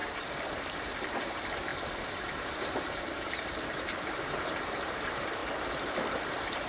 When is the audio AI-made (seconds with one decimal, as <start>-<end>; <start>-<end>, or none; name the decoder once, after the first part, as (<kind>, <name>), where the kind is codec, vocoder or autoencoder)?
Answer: 1.0-5.4 (vocoder, BigVGAN v2); 6.3-6.7